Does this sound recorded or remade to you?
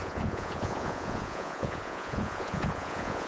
remade